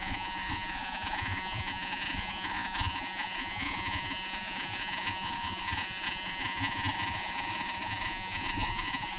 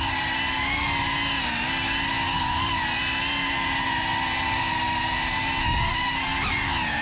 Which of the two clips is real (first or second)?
second